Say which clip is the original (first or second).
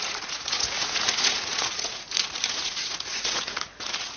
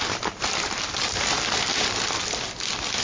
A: second